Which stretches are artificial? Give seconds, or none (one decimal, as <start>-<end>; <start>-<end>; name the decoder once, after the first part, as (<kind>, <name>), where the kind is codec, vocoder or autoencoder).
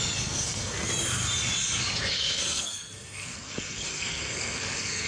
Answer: 0.0-0.9 (codec, SNAC); 2.1-5.1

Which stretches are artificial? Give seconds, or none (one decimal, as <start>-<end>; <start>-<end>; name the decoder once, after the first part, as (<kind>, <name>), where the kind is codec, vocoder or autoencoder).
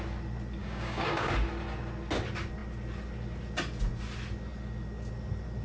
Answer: 0.6-1.3 (codec, DAC)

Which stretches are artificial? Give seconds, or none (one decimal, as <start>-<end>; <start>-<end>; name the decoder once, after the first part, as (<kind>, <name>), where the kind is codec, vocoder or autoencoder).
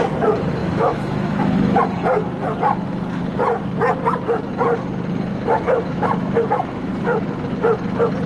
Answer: 0.6-1.8 (autoencoder, DAC-VAE); 5.3-6.9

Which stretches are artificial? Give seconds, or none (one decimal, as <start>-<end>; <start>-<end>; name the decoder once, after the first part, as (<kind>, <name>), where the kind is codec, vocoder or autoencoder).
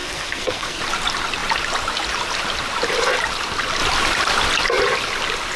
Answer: 0.0-0.8 (codec, SNAC)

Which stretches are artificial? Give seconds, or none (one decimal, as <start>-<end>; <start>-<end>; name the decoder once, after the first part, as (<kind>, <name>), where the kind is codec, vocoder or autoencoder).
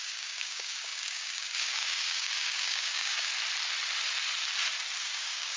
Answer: 0.0-3.3 (codec, DAC); 5.0-5.6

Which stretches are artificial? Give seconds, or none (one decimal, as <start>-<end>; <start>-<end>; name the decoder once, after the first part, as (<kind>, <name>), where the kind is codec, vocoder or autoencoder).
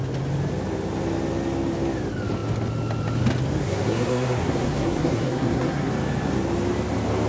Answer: 3.6-5.9 (codec, SNAC)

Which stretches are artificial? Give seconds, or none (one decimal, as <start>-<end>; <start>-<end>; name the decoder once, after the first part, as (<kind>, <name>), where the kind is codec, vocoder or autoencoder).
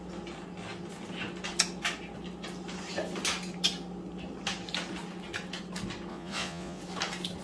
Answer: 6.1-6.8 (vocoder, Vocos)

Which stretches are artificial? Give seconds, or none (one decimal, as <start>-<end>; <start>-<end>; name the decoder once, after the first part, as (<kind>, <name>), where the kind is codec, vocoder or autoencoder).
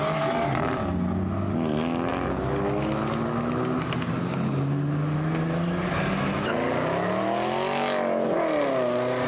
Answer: none